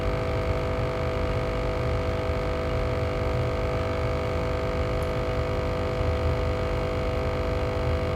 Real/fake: real